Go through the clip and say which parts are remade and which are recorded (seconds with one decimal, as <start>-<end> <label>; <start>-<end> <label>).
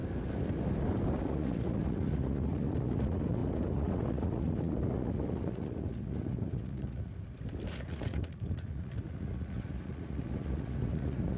0.0-1.2 recorded; 1.2-7.1 remade; 7.1-7.7 recorded; 7.7-11.4 remade